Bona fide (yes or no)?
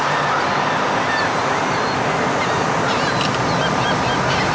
no